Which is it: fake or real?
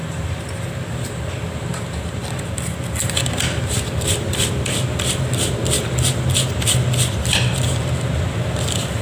fake